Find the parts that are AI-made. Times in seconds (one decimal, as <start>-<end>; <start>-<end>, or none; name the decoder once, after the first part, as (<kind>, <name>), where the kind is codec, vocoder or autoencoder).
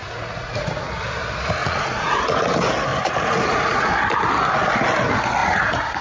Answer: 0.0-0.9 (vocoder, Vocos); 1.6-2.2; 2.9-3.9; 5.4-6.0